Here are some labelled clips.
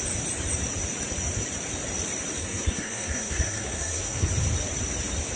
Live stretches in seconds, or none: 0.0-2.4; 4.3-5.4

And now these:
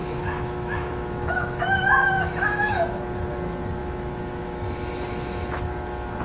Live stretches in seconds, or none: 3.0-3.8; 4.6-6.2

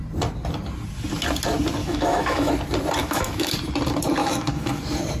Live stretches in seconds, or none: 0.0-1.8; 2.5-3.0; 3.5-4.2; 4.8-5.2